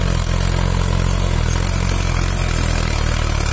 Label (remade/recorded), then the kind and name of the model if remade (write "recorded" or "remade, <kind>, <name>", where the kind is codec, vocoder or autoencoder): recorded